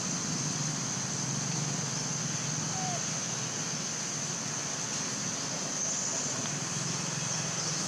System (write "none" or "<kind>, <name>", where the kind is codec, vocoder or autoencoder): none